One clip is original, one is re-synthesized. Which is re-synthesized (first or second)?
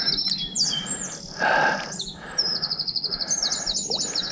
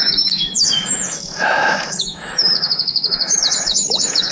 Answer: second